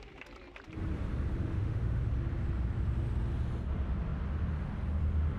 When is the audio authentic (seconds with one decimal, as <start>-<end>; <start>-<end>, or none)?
0.0-1.4; 2.0-5.4